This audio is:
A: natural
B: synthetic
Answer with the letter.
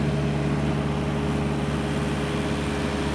A